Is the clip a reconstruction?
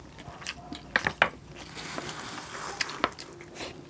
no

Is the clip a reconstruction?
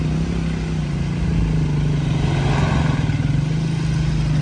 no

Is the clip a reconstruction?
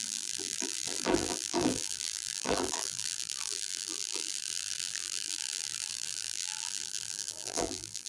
yes